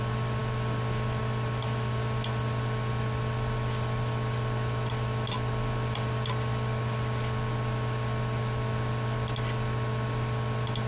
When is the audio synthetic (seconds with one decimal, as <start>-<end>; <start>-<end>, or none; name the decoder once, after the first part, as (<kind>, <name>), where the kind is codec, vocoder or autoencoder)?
none